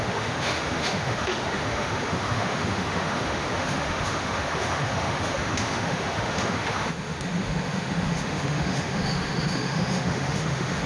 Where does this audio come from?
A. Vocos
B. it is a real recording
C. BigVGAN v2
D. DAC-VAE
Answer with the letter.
D